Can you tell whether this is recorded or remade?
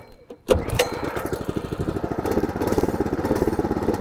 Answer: remade